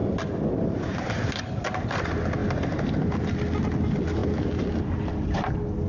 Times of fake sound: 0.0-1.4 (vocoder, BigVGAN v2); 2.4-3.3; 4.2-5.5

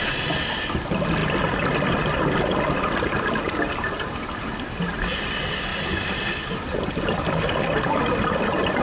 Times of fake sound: none

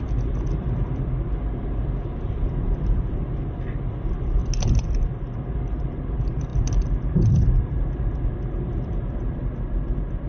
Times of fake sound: 0.0-4.4 (vocoder, BigVGAN v2); 5.3-10.3

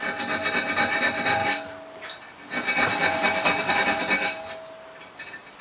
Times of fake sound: none